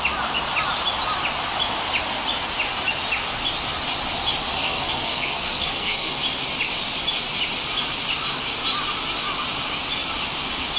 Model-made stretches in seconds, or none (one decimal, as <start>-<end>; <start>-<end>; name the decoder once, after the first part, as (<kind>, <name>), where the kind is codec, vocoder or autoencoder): 4.5-6.1 (codec, SNAC)